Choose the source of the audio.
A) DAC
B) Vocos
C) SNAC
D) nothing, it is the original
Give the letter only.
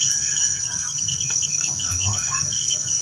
C